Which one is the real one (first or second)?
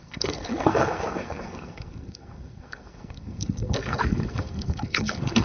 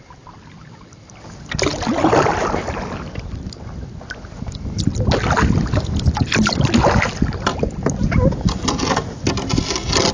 second